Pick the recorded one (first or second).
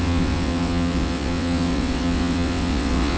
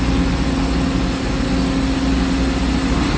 second